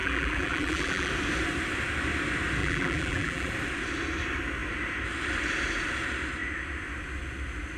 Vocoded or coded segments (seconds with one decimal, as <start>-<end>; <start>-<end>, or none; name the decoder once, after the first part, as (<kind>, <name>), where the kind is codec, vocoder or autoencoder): 0.0-1.1 (vocoder, BigVGAN v2); 2.6-3.5